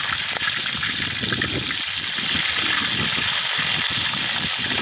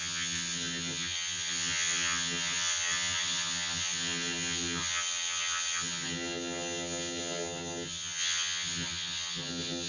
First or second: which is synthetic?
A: second